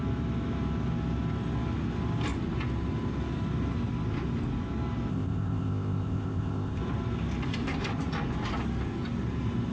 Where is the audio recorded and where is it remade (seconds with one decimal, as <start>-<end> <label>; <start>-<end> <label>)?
0.0-5.1 recorded; 5.1-6.8 remade; 6.8-9.7 recorded